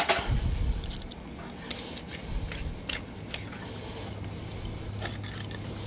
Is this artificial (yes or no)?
no